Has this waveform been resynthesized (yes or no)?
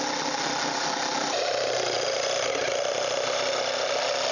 no